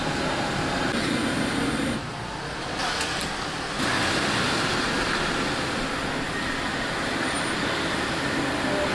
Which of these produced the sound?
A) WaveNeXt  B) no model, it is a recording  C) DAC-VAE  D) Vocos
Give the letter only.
B